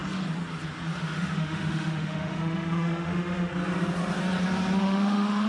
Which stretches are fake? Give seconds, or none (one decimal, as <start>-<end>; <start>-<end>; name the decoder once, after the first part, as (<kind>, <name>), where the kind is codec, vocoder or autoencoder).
1.0-3.5 (autoencoder, DAC-VAE); 4.8-5.5